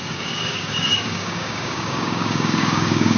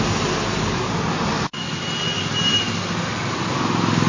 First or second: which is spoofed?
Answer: first